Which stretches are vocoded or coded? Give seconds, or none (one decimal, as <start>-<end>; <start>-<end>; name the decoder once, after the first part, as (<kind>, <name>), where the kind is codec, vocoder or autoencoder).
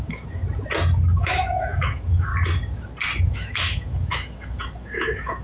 0.0-0.4 (autoencoder, DAC-VAE); 1.2-2.3; 3.2-5.4